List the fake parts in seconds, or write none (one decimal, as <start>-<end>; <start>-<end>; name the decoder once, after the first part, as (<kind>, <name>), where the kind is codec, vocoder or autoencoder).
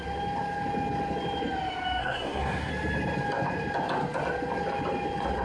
2.0-2.7 (codec, SNAC)